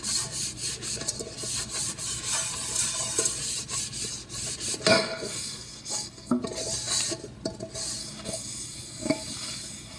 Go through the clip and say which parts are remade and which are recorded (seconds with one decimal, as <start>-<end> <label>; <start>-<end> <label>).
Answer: 0.0-4.9 recorded; 4.9-6.4 remade; 6.4-8.0 recorded; 8.0-10.0 remade